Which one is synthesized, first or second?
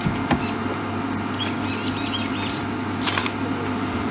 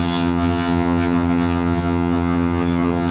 second